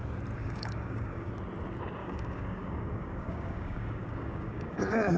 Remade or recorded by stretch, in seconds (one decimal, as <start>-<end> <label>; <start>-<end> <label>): 0.0-0.4 recorded; 0.4-1.3 remade; 1.3-2.0 recorded; 2.0-5.2 remade